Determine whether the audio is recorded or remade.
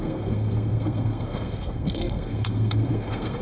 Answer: remade